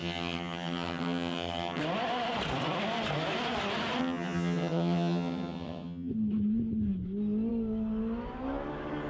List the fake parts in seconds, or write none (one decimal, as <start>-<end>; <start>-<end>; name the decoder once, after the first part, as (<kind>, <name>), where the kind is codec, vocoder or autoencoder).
0.0-1.8 (vocoder, HiFi-GAN); 4.0-6.1